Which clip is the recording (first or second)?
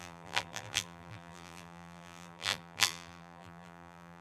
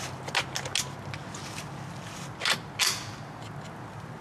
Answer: second